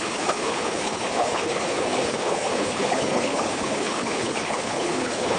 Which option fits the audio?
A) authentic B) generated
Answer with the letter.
B